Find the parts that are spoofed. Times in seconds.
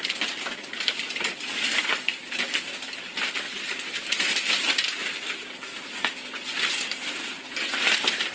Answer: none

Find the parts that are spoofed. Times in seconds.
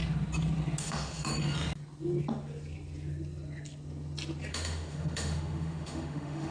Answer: 0.8-1.3 (autoencoder, DAC-VAE); 4.5-6.5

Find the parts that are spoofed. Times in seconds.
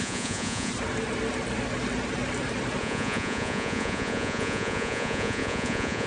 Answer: 0.0-0.7 (vocoder, Vocos); 2.8-6.1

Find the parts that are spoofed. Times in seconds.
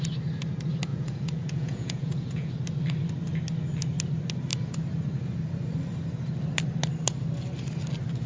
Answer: 0.9-2.5 (vocoder, Vocos)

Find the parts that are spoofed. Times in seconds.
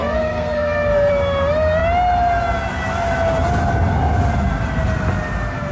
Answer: 0.0-1.1 (codec, SNAC)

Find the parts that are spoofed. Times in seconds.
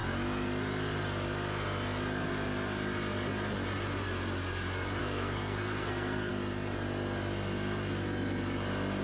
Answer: 5.0-6.3 (codec, SNAC)